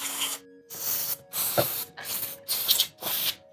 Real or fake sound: real